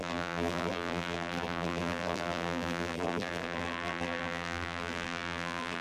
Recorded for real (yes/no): no